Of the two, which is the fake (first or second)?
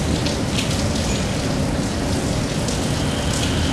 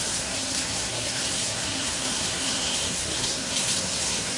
second